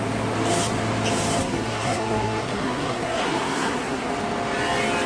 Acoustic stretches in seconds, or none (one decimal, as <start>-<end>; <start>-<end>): 0.0-1.4; 4.1-5.1